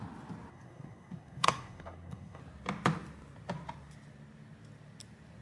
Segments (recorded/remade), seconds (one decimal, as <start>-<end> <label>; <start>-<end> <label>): 0.0-0.5 recorded; 0.5-2.4 remade; 2.4-5.4 recorded